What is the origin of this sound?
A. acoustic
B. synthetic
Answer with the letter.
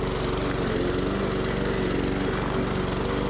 A